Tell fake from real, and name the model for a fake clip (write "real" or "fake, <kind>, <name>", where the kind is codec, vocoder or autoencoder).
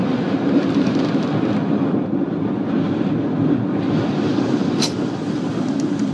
real